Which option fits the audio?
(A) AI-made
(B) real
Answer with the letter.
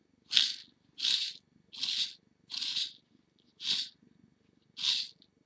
B